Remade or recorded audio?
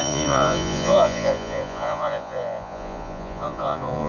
remade